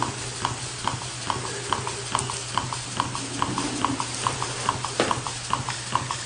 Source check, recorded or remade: recorded